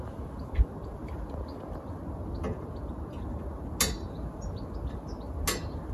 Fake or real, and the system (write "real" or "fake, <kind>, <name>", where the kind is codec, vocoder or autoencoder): real